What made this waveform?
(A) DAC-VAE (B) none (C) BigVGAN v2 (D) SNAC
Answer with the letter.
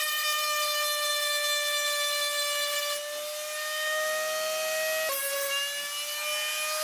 B